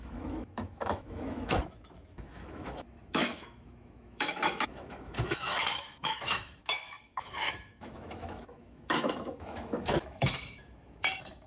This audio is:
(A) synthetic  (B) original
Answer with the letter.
A